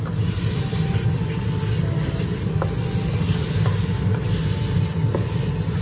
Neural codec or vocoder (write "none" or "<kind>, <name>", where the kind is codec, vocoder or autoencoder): none